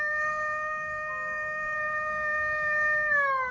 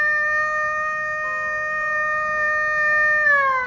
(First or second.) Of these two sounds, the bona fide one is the second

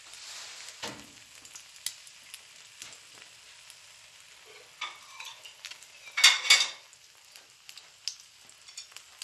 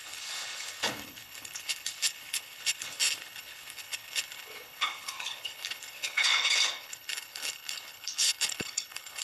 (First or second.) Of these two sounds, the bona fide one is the first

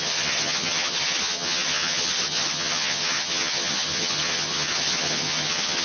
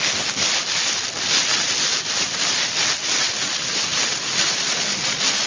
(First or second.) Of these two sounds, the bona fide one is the second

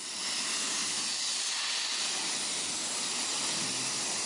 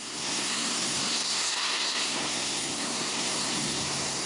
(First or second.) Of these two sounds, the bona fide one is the first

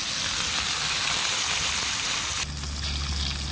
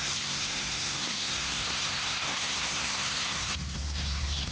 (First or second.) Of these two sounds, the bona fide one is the first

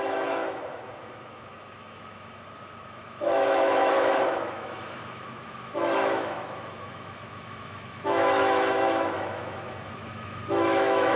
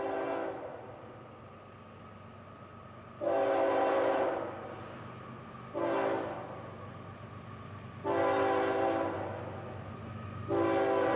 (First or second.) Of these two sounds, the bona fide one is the second